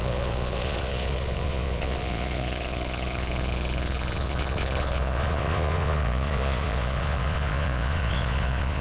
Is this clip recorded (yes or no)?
no